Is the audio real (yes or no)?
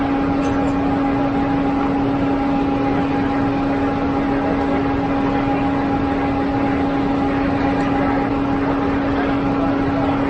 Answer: yes